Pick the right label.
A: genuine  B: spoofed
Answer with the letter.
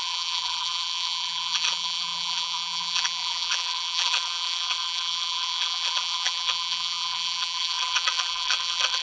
B